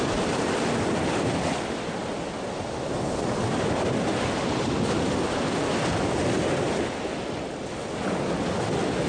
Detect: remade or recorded recorded